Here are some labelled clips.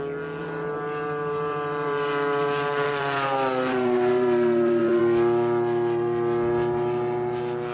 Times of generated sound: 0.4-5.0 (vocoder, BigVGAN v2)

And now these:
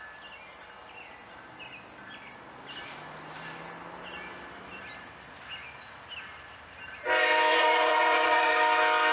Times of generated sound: 7.5-8.5 (vocoder, Vocos)